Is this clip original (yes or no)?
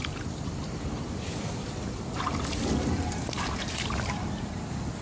yes